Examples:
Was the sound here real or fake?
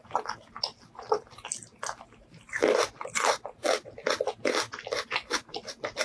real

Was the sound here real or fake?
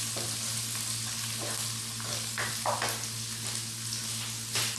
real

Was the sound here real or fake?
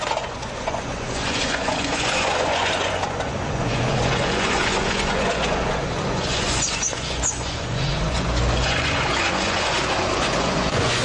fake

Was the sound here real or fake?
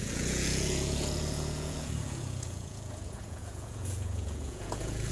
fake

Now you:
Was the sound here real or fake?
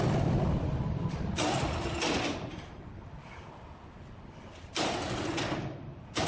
real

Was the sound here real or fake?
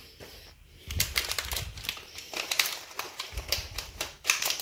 fake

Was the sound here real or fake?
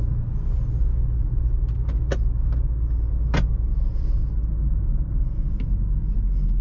real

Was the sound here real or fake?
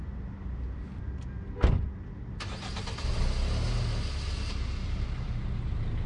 real